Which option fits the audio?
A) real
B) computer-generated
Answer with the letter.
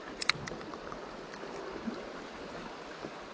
A